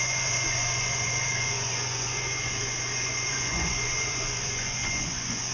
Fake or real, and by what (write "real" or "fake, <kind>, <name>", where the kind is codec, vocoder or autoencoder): fake, vocoder, Vocos